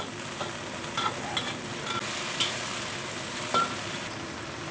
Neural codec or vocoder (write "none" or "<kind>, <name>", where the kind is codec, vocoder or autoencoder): none